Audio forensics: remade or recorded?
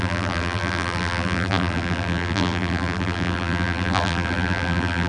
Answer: remade